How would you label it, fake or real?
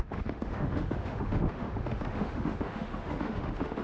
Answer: fake